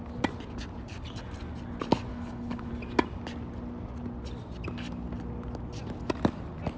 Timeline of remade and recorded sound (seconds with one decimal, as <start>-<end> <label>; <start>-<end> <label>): 0.0-2.1 recorded; 2.1-2.7 remade; 2.7-6.8 recorded